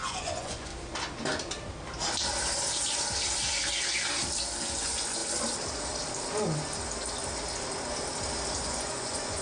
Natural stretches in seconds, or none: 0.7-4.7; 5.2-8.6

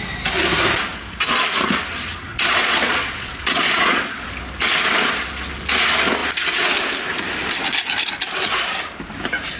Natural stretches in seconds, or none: 0.0-2.3; 4.3-9.6

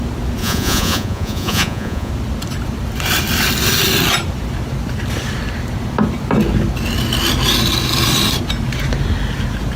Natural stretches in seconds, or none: 0.0-0.4; 2.1-9.8